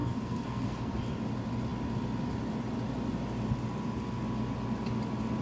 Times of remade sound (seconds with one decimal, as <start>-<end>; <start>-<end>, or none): 0.0-1.0